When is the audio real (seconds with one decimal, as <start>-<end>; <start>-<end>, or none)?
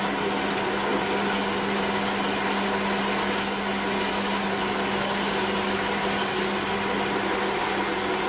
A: 0.0-8.3